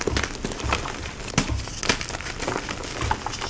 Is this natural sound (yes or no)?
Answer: yes